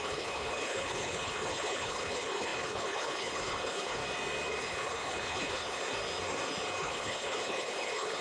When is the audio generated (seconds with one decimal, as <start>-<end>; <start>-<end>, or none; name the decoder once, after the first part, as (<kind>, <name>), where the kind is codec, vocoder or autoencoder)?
0.0-4.0 (codec, HILCodec); 4.6-5.8; 6.8-8.2